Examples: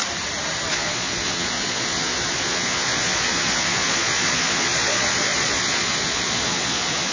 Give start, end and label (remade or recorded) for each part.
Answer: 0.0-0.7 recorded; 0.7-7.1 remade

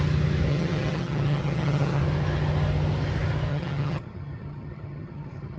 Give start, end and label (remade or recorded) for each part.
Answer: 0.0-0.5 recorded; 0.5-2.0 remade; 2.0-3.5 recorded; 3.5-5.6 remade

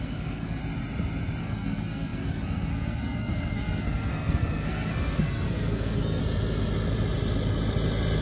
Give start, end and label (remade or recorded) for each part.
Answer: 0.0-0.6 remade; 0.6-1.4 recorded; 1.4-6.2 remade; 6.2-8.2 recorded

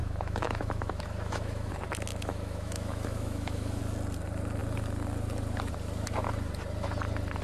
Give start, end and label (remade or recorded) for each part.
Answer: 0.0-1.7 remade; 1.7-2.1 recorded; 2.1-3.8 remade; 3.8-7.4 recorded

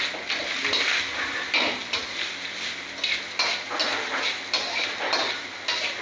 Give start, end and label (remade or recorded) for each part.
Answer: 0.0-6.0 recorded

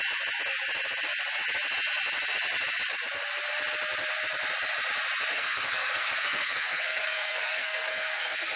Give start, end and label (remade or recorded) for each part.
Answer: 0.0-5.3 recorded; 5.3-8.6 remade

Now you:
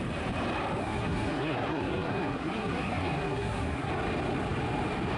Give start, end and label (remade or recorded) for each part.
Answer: 0.0-0.8 recorded; 0.8-3.9 remade; 3.9-5.2 recorded